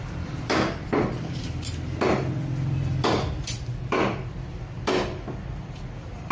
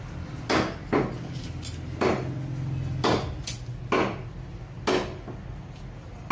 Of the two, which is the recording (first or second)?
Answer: second